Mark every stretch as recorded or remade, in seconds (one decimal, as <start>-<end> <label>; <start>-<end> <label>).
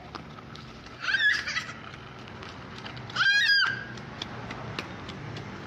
0.0-5.7 recorded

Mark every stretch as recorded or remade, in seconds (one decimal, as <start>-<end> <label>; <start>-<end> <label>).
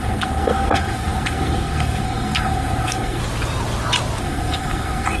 0.0-3.2 remade; 3.2-4.2 recorded; 4.2-5.2 remade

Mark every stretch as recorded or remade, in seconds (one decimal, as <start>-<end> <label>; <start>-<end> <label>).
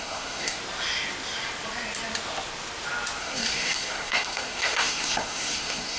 0.0-0.6 remade; 0.6-3.2 recorded; 3.2-6.0 remade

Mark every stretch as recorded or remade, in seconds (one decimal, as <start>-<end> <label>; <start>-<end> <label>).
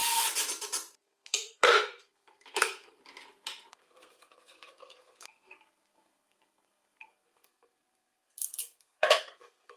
0.0-1.0 recorded; 1.0-3.0 remade; 3.0-3.7 recorded; 3.7-9.8 remade